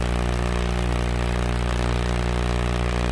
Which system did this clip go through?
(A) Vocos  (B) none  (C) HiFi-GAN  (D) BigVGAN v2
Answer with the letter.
D